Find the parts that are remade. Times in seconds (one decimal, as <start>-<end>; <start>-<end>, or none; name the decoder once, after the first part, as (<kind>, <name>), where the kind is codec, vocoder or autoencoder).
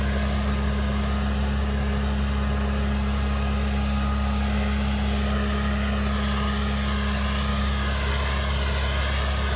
7.5-8.1 (codec, DAC)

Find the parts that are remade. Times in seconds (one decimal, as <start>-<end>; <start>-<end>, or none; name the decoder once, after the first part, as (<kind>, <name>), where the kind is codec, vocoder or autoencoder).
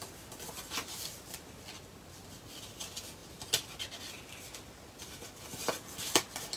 none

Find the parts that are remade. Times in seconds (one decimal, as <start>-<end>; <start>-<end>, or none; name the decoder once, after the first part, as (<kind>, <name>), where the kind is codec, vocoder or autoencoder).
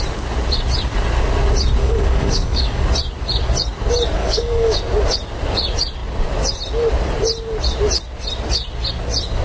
1.8-2.8 (codec, DAC); 4.2-4.8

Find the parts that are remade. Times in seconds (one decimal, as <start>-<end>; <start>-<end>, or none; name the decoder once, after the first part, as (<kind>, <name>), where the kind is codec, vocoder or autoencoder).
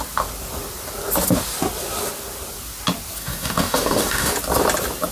3.2-4.3 (codec, DAC)